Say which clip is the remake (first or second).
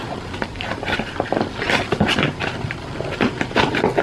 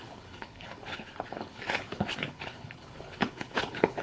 second